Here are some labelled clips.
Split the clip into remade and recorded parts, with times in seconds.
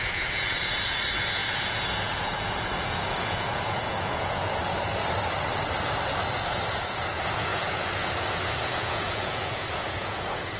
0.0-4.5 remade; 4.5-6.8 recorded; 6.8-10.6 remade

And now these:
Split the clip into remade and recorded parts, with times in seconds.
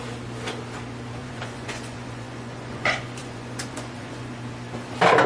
0.0-1.2 recorded; 1.2-4.4 remade; 4.4-5.3 recorded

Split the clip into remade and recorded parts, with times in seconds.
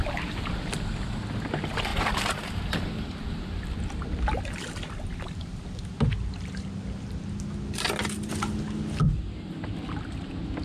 0.0-10.6 recorded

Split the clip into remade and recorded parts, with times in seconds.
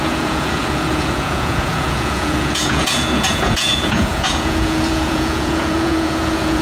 0.0-6.6 remade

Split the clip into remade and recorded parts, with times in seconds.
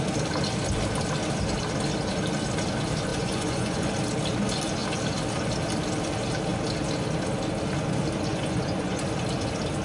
0.0-3.1 recorded; 3.1-3.9 remade; 3.9-8.3 recorded; 8.3-9.0 remade; 9.0-9.8 recorded